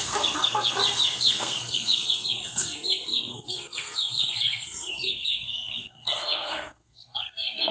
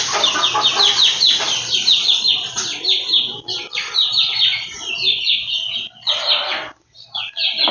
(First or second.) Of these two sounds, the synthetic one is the first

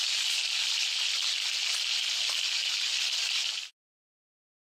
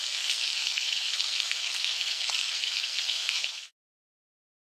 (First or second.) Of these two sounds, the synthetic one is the second